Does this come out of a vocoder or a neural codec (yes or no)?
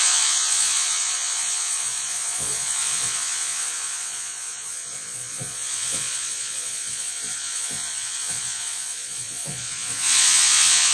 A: yes